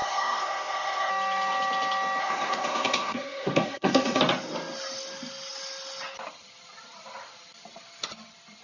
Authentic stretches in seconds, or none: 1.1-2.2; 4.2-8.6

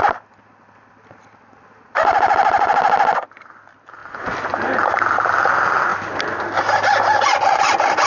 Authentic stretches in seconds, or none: 0.0-8.1